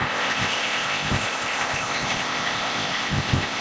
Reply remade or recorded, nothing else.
remade